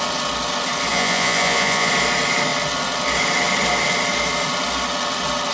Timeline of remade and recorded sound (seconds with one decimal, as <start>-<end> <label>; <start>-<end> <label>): 0.0-0.9 recorded; 0.9-1.9 remade; 1.9-5.5 recorded